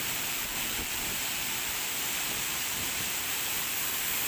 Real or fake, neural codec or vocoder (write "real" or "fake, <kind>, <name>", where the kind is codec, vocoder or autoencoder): fake, vocoder, BigVGAN v2